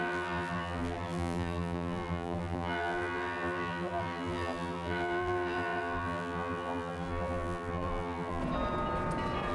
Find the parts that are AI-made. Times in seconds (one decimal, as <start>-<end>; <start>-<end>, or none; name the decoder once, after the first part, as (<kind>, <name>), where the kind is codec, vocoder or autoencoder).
0.0-8.4 (vocoder, BigVGAN v2)